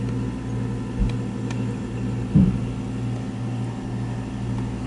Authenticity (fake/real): real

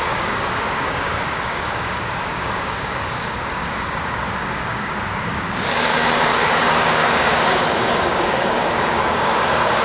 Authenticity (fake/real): fake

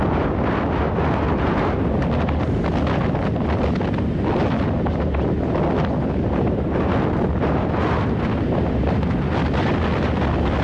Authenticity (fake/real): real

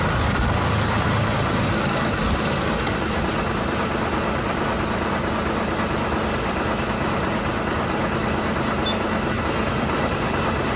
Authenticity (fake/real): real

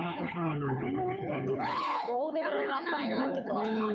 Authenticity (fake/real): fake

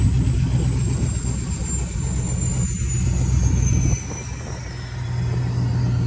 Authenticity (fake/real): real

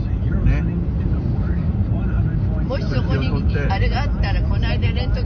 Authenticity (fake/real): real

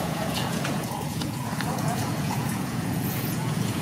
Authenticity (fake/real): fake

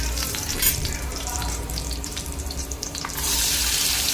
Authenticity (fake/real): fake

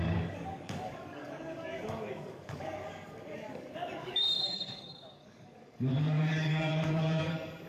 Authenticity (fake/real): fake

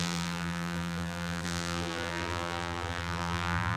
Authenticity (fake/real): fake